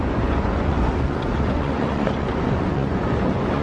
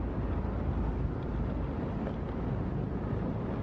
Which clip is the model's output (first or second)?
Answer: first